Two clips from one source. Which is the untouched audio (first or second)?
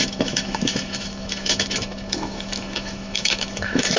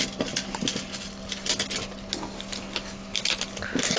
second